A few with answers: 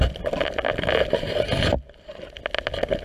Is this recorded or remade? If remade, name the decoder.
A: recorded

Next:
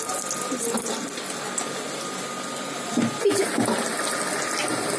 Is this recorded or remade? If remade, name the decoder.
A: recorded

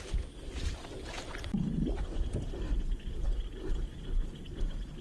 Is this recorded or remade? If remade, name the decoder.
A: recorded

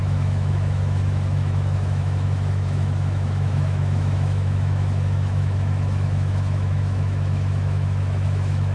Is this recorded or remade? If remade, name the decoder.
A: remade, autoencoder, DAC-VAE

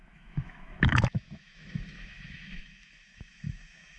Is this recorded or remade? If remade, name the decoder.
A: remade, autoencoder, DAC-VAE